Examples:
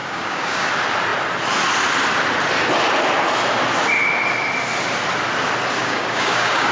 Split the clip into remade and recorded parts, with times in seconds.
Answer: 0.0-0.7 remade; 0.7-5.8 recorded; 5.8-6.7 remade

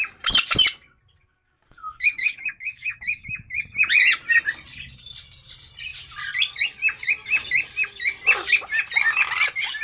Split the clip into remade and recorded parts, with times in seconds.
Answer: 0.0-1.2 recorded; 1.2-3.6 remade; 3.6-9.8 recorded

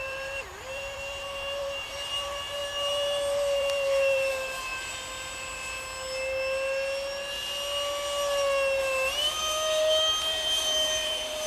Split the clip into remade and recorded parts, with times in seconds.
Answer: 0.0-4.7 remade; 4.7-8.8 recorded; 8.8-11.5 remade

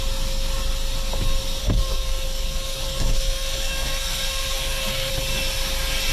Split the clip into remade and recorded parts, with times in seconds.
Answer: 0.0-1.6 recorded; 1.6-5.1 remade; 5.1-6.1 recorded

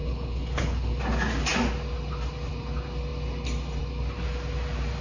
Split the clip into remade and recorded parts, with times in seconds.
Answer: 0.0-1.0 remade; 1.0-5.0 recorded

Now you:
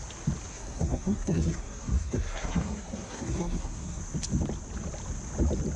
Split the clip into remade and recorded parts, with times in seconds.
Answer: 0.0-0.5 recorded; 0.5-4.0 remade; 4.0-5.8 recorded